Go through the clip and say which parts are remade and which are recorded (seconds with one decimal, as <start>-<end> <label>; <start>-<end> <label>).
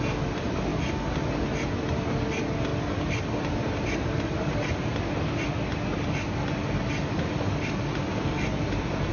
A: 0.0-8.1 recorded; 8.1-9.1 remade